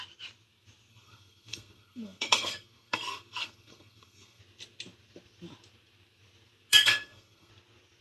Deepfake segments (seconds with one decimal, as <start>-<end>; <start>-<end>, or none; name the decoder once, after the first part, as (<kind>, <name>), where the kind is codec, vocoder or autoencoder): 0.9-4.4 (codec, SNAC); 6.7-7.5